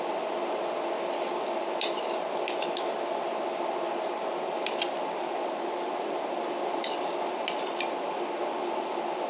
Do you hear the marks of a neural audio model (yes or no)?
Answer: no